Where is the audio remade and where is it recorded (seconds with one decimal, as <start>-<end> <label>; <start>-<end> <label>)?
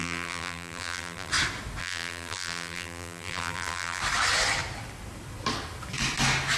0.0-1.3 remade; 1.3-1.8 recorded; 1.8-4.0 remade; 4.0-6.6 recorded